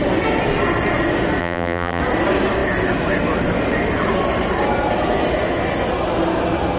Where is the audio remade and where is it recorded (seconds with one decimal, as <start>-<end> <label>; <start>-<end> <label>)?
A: 0.0-1.4 recorded; 1.4-2.0 remade; 2.0-6.8 recorded